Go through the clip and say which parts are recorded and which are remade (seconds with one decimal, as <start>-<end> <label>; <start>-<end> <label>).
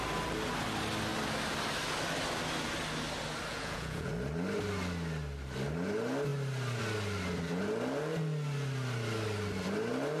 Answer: 0.0-3.5 recorded; 3.5-4.1 remade; 4.1-10.2 recorded